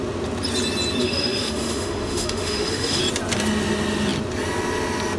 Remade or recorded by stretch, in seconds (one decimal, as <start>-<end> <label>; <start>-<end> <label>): 0.0-1.0 recorded; 1.0-3.0 remade; 3.0-5.2 recorded